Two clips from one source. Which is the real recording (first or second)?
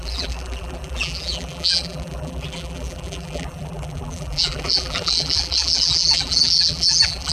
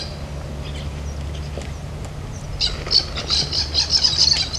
second